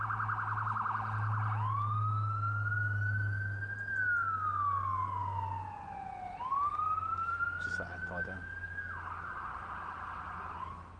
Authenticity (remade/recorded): recorded